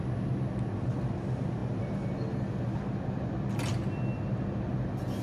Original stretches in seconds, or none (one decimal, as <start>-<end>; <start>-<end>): 0.0-5.2